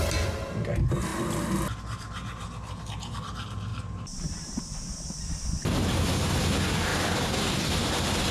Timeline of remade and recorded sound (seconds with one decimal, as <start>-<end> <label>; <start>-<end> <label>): 0.0-3.7 recorded; 3.7-4.9 remade; 4.9-6.9 recorded; 6.9-7.7 remade; 7.7-8.3 recorded